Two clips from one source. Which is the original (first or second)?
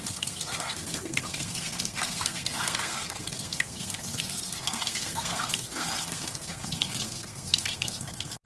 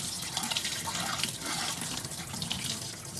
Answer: second